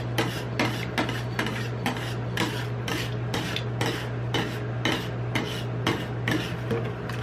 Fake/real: real